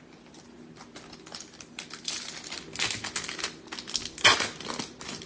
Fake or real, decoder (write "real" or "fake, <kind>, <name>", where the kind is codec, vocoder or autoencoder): real